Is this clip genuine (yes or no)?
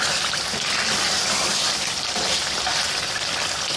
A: yes